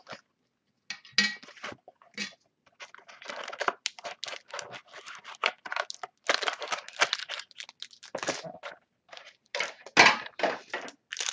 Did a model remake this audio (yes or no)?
no